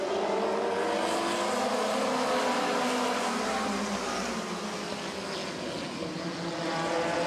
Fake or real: real